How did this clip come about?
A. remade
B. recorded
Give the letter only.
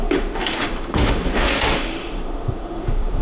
A